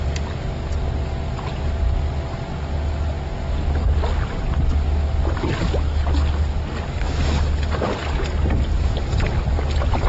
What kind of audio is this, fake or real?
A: real